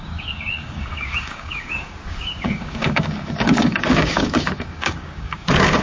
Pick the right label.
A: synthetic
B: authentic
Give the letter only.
A